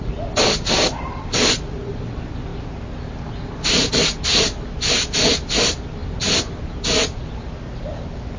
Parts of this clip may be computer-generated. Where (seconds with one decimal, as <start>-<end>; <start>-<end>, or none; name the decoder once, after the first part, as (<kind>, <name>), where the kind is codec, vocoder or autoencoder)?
none